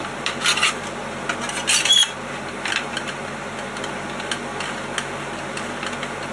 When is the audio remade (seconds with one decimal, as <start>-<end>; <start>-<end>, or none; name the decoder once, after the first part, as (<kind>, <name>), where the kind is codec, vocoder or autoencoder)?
none